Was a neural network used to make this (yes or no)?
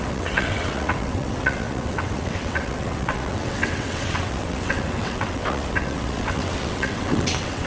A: yes